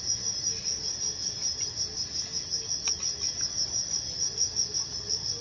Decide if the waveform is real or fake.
real